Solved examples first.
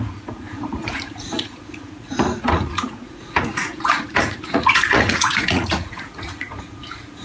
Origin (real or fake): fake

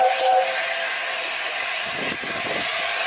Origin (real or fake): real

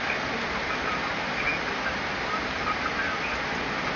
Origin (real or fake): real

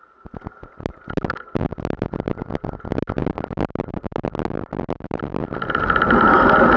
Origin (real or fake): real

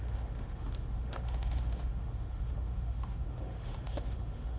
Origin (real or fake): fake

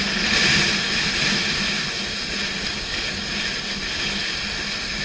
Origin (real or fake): real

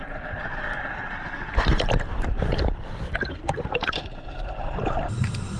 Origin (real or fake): fake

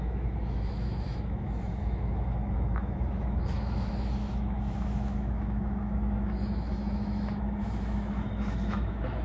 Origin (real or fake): fake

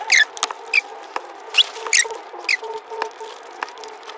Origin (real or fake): real